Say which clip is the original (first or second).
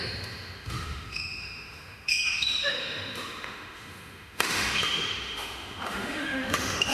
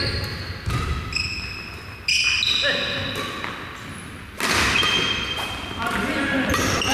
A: second